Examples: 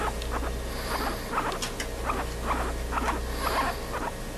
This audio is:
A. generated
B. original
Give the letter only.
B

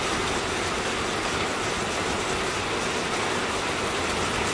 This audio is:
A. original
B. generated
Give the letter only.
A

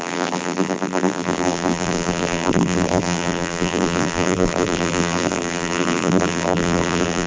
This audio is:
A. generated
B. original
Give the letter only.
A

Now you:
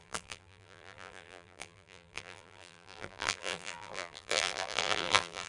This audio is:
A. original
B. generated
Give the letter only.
B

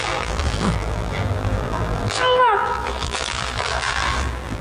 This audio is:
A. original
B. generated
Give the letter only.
B